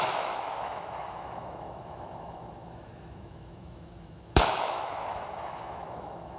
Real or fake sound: fake